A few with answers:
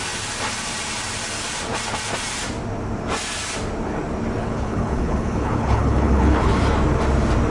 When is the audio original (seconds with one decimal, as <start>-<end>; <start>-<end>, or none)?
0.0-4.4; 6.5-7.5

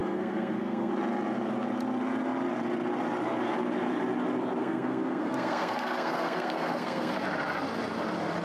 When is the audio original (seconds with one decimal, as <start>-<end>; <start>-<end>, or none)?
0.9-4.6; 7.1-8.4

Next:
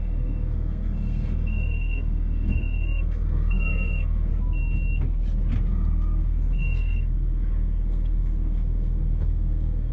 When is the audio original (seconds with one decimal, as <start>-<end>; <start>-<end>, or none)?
4.3-5.7

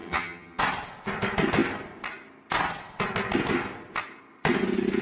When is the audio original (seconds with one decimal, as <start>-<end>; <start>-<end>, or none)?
0.6-5.0

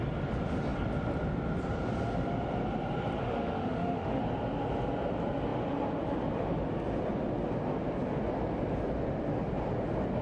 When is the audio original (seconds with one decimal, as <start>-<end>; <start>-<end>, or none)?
0.0-3.2; 4.2-10.2

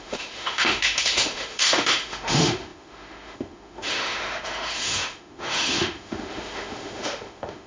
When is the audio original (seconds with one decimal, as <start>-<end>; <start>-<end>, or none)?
none

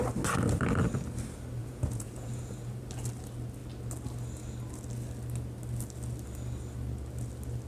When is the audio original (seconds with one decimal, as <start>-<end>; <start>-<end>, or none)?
0.0-1.6; 2.8-7.7